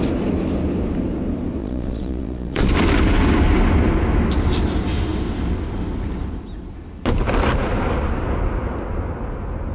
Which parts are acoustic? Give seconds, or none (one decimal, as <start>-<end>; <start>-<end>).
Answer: 0.0-1.6; 2.7-9.7